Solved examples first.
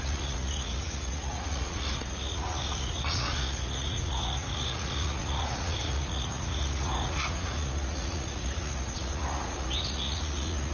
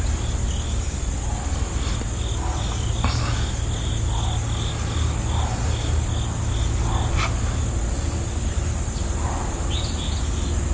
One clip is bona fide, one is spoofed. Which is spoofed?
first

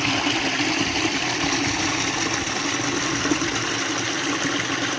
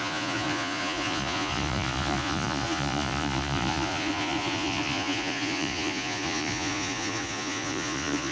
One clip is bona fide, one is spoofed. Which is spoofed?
second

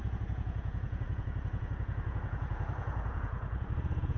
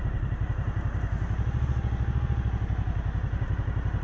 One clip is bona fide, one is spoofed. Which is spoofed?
first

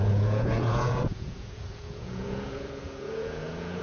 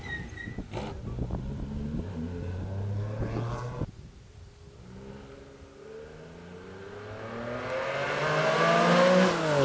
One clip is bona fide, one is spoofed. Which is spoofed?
first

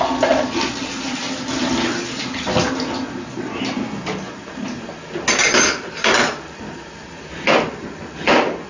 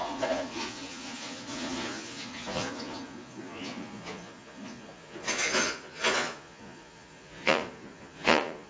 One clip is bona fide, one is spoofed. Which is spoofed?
second